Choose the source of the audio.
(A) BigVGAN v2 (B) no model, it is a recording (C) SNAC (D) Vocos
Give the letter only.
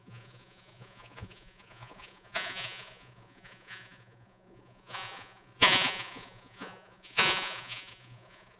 D